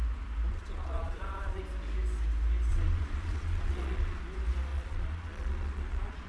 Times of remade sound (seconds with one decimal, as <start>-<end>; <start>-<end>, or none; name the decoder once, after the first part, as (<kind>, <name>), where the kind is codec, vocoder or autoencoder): 0.5-1.6 (vocoder, Vocos); 2.7-4.2; 4.7-6.3

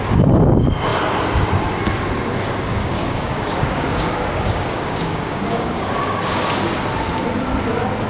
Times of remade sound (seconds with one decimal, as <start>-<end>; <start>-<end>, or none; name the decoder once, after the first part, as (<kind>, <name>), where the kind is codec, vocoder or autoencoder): 2.7-6.4 (codec, DAC)

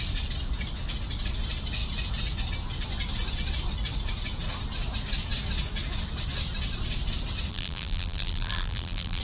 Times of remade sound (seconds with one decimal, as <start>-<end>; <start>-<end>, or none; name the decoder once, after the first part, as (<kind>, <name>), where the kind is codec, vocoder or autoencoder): 7.5-9.2 (vocoder, BigVGAN v2)

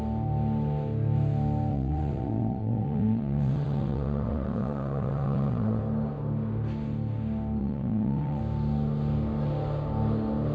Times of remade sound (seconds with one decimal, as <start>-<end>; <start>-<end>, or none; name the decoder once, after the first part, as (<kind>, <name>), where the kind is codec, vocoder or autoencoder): 1.7-5.8 (vocoder, WaveNeXt); 7.6-8.4